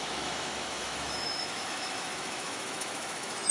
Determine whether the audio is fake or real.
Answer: fake